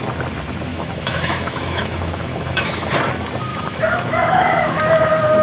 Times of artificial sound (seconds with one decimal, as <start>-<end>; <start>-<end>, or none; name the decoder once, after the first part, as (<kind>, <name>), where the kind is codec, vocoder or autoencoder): 0.7-2.9 (autoencoder, DAC-VAE); 3.5-4.8